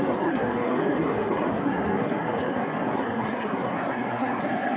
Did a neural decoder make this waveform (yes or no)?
yes